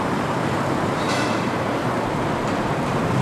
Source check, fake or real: fake